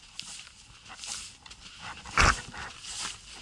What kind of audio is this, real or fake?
real